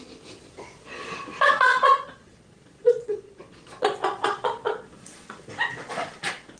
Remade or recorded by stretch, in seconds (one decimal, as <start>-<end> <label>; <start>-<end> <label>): 0.0-6.6 remade